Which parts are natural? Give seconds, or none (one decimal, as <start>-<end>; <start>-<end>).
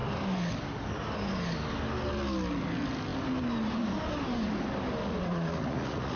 0.0-5.0